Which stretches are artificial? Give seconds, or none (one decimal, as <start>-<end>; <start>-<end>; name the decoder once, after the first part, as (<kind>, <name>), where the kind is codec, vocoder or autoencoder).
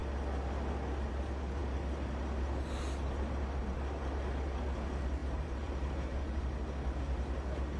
5.2-6.4 (vocoder, BigVGAN v2)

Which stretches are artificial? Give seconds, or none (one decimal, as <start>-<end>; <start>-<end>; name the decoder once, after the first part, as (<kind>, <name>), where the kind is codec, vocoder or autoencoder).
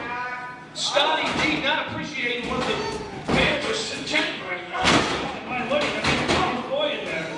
3.4-5.0 (codec, SNAC)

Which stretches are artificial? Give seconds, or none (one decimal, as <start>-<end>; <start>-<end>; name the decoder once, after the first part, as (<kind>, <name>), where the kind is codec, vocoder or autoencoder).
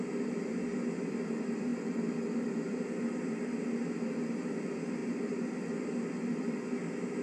1.7-3.3 (vocoder, BigVGAN v2); 5.0-5.5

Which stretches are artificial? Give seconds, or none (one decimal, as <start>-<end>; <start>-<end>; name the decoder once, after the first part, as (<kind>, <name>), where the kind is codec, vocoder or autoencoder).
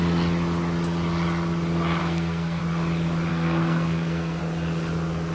2.0-2.6 (codec, SNAC); 3.3-4.4